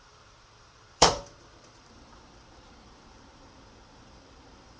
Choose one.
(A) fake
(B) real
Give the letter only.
A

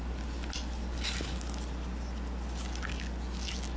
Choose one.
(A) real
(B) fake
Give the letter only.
A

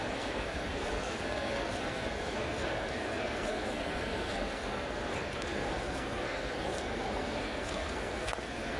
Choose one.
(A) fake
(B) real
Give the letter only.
A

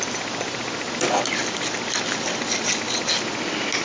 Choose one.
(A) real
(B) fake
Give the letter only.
A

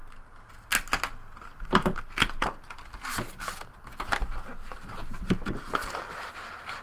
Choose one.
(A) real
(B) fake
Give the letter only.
A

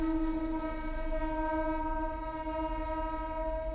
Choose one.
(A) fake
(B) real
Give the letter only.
B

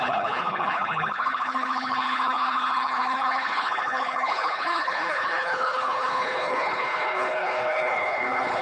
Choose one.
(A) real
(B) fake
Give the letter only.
B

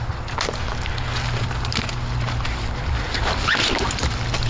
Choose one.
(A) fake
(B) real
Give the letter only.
B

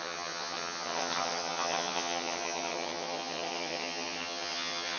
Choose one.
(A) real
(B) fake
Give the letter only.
B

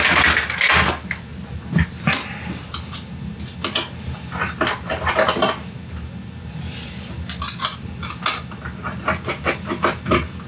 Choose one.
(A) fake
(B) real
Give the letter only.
B